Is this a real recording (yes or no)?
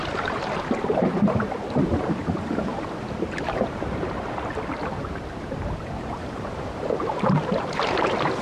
no